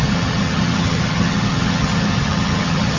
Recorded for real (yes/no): no